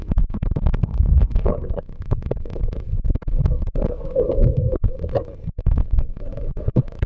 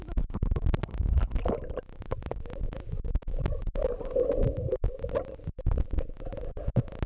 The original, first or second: second